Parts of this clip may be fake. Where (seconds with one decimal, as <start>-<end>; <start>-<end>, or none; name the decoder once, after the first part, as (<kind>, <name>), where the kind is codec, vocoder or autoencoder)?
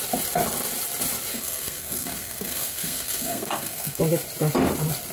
1.3-4.0 (codec, SNAC)